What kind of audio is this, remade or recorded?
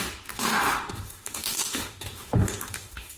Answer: remade